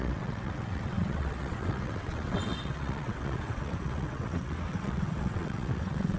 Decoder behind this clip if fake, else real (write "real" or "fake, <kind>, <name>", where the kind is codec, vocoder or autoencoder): fake, vocoder, WaveNeXt